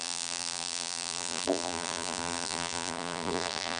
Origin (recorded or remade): remade